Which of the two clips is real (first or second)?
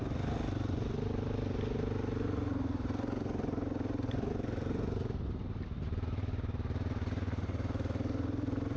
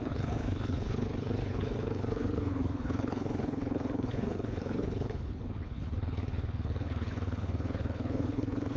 first